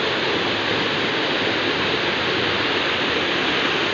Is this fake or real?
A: real